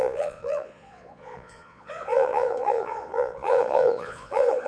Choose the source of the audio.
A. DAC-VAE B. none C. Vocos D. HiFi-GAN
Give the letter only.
C